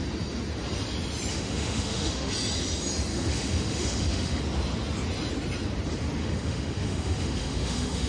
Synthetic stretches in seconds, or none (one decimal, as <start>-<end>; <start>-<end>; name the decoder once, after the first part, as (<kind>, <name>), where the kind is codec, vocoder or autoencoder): 1.3-2.3 (autoencoder, DAC-VAE); 3.1-4.4; 6.2-8.1